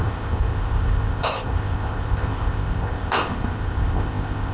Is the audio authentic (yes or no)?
no